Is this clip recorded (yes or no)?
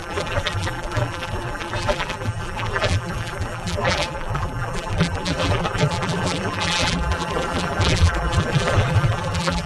no